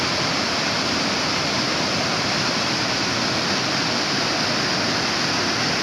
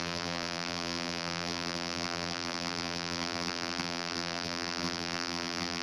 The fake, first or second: second